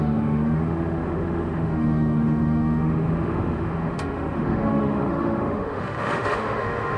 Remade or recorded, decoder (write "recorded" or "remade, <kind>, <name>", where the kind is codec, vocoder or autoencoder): remade, autoencoder, DAC-VAE